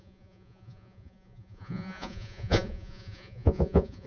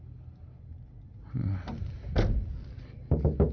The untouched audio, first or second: second